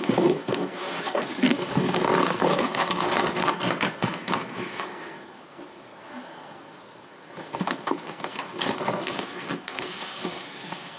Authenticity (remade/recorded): remade